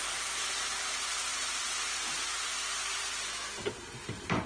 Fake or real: fake